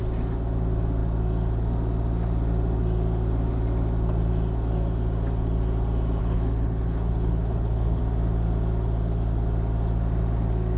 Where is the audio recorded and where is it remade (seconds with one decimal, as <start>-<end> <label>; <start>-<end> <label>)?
0.0-6.2 recorded; 6.2-8.0 remade; 8.0-10.8 recorded